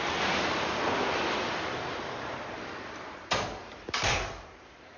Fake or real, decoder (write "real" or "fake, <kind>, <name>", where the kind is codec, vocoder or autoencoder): real